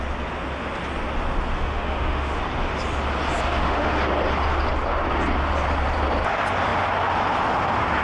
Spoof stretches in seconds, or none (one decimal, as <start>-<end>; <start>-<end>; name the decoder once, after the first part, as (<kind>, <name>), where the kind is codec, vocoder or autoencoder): 1.5-2.4 (autoencoder, DAC-VAE); 3.5-4.0